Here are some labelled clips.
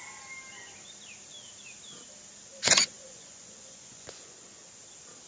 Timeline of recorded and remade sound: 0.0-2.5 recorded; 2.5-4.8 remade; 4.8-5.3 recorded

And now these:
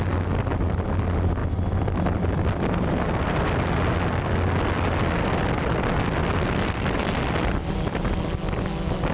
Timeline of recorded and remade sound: 0.0-9.1 recorded

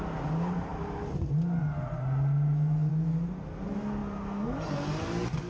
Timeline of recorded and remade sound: 0.0-5.5 recorded

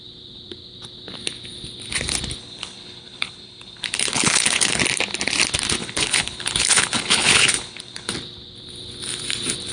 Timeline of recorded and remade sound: 0.0-2.4 recorded; 2.4-4.8 remade; 4.8-5.8 recorded; 5.8-8.1 remade; 8.1-9.7 recorded